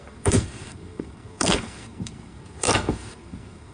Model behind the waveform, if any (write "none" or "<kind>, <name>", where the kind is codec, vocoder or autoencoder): codec, SNAC